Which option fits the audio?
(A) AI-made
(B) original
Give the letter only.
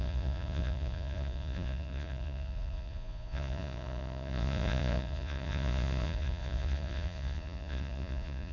A